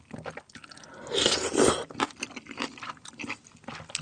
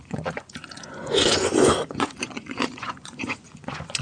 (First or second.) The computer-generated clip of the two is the second